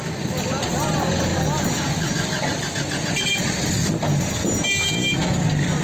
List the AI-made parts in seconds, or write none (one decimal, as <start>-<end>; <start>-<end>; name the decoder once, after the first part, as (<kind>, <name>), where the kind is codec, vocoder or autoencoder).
none